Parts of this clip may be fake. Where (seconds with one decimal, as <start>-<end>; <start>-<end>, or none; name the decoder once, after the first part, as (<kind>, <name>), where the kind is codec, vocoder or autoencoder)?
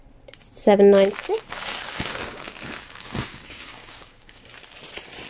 1.2-4.4 (codec, DAC)